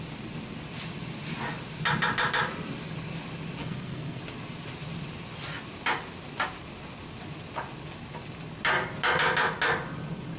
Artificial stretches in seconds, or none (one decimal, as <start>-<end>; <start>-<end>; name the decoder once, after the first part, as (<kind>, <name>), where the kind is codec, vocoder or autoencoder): 3.6-4.2 (codec, SNAC)